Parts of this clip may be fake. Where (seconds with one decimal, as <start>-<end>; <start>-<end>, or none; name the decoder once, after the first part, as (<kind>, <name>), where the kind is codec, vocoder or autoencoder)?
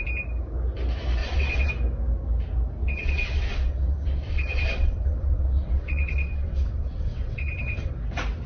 1.2-1.7 (vocoder, WaveNeXt); 2.8-7.9